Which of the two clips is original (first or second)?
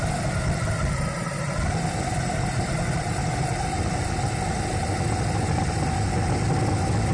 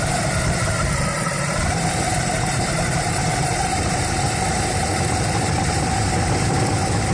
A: first